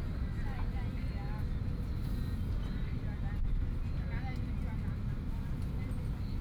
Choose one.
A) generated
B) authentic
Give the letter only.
B